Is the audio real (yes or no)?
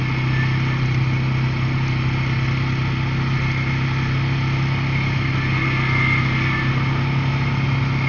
yes